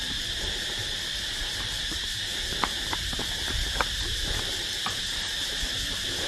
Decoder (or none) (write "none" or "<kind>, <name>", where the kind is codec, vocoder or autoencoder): vocoder, BigVGAN v2